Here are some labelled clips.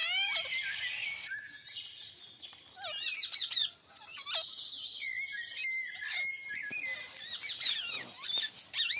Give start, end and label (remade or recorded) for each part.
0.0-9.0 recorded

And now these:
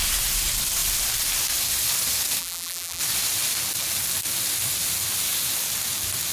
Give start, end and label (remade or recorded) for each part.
0.0-2.4 recorded; 2.4-3.0 remade; 3.0-6.3 recorded

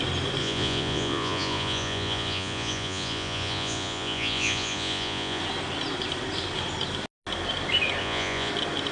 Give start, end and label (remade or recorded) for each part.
0.0-0.4 recorded; 0.4-5.4 remade; 5.4-8.0 recorded; 8.0-8.5 remade; 8.5-8.9 recorded

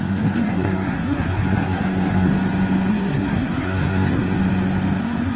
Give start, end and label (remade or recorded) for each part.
0.0-2.3 remade; 2.3-2.9 recorded; 2.9-4.4 remade; 4.4-5.0 recorded; 5.0-5.4 remade

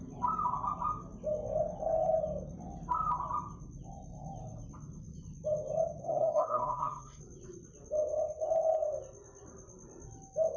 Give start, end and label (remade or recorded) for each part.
0.0-6.0 recorded; 6.0-7.2 remade; 7.2-10.6 recorded

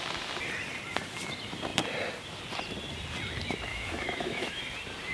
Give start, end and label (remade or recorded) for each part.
0.0-3.7 recorded; 3.7-4.6 remade; 4.6-5.1 recorded

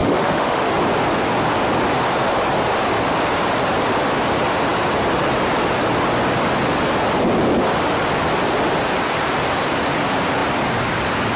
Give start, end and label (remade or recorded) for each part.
0.0-0.7 remade; 0.7-11.4 recorded